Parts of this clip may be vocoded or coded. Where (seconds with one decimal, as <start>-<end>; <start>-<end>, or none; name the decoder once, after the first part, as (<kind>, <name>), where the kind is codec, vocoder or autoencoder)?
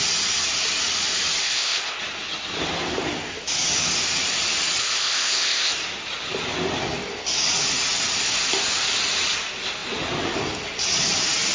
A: 1.4-2.0 (codec, ZipCodec); 4.8-5.7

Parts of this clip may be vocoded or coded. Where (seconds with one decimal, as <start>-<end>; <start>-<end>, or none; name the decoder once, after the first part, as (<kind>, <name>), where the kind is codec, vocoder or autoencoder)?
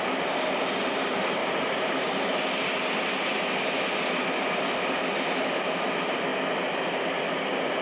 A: none